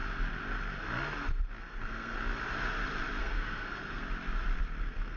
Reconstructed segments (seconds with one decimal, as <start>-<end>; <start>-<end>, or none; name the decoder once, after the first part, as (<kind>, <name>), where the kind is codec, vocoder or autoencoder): 1.6-2.2 (codec, SNAC); 3.2-4.0; 4.8-5.2